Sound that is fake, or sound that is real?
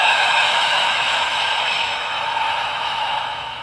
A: fake